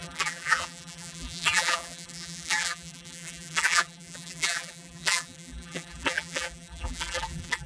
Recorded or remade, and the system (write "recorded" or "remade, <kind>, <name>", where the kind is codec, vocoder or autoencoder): remade, vocoder, BigVGAN v2